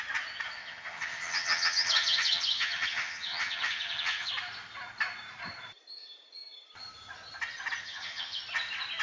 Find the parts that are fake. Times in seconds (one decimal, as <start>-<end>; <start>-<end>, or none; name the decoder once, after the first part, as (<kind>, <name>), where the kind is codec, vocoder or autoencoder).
0.6-4.3 (vocoder, HiFi-GAN); 7.8-8.4